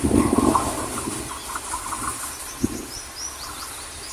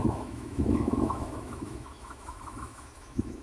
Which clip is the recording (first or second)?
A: first